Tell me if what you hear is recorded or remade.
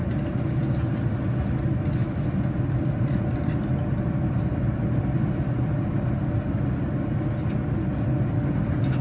recorded